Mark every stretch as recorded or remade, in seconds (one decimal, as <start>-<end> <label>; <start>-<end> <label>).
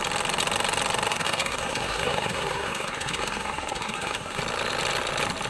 0.0-1.1 recorded; 1.1-4.4 remade; 4.4-5.5 recorded